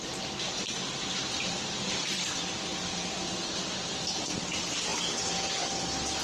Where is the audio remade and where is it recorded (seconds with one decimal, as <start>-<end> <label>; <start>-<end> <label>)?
0.0-6.2 recorded